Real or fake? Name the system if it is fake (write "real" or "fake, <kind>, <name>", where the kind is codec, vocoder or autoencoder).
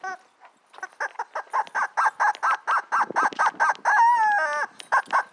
real